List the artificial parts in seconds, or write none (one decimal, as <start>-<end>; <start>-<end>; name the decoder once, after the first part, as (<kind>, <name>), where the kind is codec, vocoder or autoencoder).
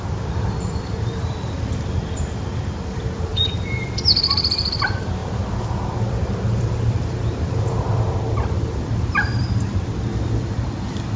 0.0-11.2 (vocoder, BigVGAN v2)